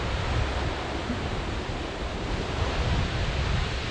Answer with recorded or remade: recorded